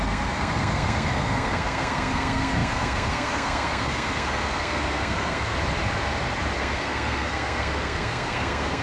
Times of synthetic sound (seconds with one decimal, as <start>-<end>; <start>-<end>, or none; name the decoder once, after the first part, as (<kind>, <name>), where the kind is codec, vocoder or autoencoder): 0.0-5.5 (codec, SNAC); 6.6-8.8